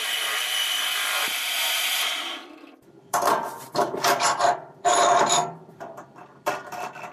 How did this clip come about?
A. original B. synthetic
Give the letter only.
B